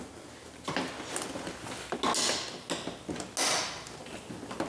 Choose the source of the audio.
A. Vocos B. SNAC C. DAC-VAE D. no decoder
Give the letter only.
D